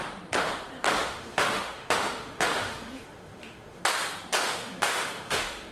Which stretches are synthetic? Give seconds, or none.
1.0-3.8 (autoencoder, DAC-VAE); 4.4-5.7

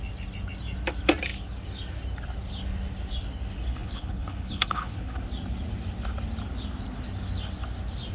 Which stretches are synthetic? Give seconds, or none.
3.7-5.2 (codec, HILCodec)

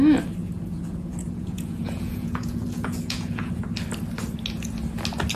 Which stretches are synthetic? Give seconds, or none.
0.4-3.6 (vocoder, Vocos)

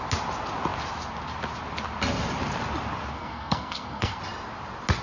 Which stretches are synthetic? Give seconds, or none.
3.1-4.2 (codec, SNAC)

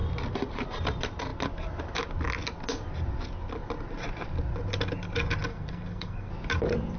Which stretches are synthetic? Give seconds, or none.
5.5-6.3 (codec, SNAC)